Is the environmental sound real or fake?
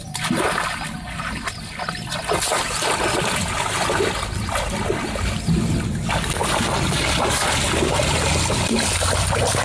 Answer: real